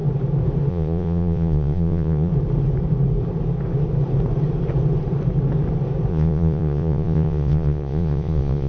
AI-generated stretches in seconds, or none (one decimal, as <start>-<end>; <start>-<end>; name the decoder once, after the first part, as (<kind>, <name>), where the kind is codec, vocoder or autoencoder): 0.7-2.3 (vocoder, Vocos); 6.1-8.7